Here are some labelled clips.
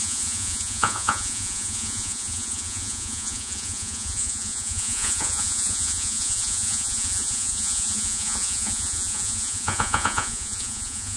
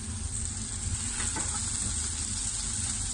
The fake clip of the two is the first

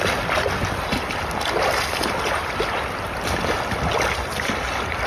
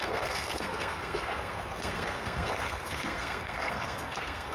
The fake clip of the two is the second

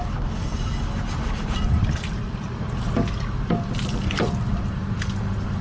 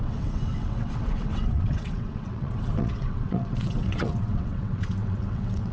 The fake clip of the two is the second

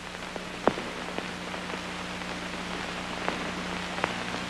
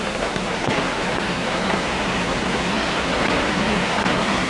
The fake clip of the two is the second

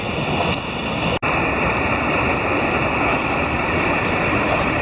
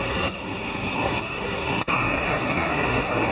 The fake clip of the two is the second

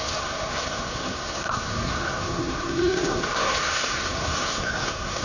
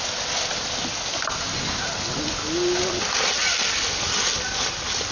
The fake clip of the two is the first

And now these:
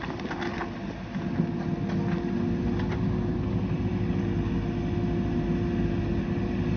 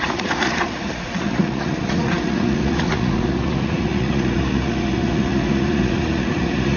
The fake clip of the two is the second